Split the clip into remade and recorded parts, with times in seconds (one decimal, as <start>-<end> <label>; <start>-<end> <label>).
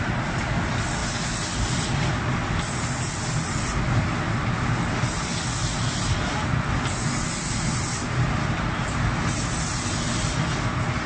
0.0-11.1 recorded